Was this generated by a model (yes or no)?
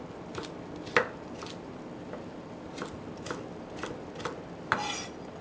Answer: no